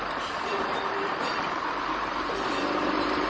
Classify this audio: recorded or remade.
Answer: remade